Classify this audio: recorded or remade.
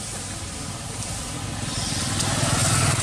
recorded